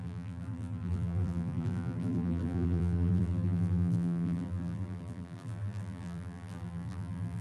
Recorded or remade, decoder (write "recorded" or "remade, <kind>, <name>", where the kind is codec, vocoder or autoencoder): remade, vocoder, BigVGAN v2